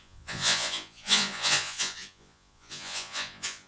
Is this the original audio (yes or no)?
no